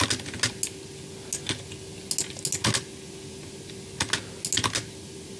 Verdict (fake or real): real